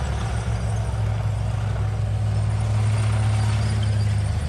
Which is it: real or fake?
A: real